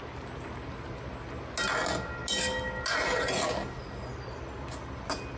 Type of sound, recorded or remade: recorded